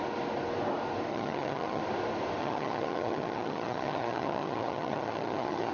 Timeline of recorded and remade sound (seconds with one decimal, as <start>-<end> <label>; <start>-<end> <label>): 0.0-1.1 recorded; 1.1-1.8 remade; 1.8-2.4 recorded; 2.4-5.7 remade